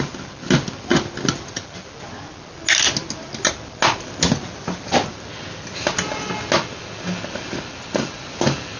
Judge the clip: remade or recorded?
recorded